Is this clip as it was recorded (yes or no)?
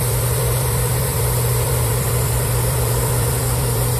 no